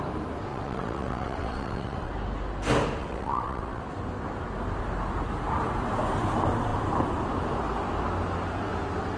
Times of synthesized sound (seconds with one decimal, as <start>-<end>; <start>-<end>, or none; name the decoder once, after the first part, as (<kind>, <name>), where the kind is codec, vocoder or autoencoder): 0.5-2.1 (vocoder, WaveNeXt); 3.0-3.8